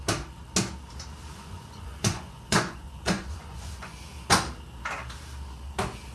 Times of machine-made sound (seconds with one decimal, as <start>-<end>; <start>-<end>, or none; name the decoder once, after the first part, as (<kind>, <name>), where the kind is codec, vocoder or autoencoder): 1.3-4.0 (vocoder, Vocos)

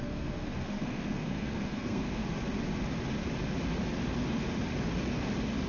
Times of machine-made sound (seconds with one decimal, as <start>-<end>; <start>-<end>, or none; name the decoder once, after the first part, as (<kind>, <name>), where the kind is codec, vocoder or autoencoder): 0.0-2.2 (codec, SNAC)

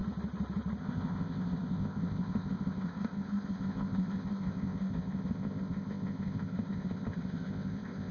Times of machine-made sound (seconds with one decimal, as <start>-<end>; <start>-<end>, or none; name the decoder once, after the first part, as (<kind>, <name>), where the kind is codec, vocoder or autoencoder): 0.8-8.1 (codec, ZipCodec)

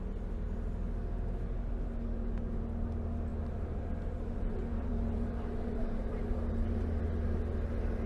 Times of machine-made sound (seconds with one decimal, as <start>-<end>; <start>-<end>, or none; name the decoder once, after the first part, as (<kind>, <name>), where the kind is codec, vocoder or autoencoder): 3.3-7.0 (vocoder, BigVGAN v2)

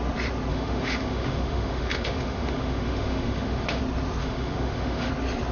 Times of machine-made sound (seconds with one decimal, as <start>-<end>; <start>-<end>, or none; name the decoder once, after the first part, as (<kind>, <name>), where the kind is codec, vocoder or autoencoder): 0.5-3.8 (autoencoder, DAC-VAE); 4.2-5.1

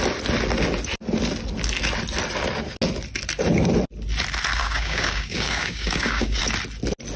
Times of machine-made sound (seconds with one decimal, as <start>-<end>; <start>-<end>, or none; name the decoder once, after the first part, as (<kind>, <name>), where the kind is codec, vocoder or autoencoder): 4.6-6.4 (codec, DAC)